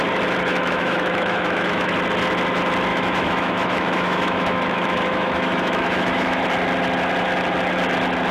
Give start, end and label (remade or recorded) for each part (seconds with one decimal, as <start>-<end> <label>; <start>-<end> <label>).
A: 0.0-0.5 recorded; 0.5-1.9 remade; 1.9-2.9 recorded; 2.9-6.4 remade; 6.4-8.3 recorded